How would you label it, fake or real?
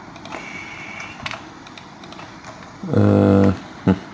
real